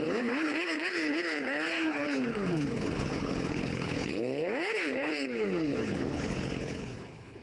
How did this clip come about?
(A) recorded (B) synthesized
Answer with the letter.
B